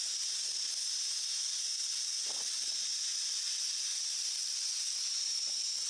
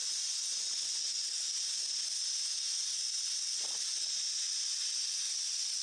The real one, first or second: second